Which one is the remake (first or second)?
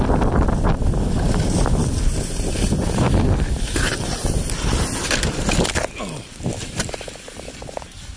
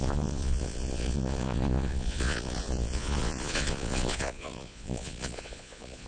second